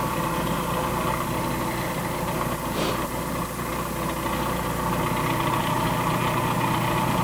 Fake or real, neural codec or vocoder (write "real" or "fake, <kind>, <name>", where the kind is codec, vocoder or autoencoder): real